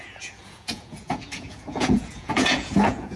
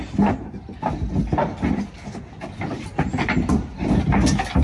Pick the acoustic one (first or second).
second